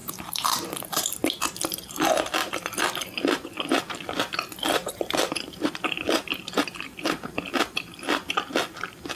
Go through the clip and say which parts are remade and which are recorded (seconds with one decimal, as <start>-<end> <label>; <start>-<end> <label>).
0.0-1.4 remade; 1.4-2.4 recorded; 2.4-3.3 remade; 3.3-4.8 recorded; 4.8-6.4 remade; 6.4-9.2 recorded